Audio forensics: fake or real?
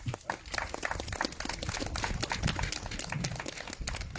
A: real